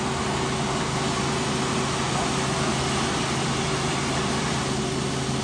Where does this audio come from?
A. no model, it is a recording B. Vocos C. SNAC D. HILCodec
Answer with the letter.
A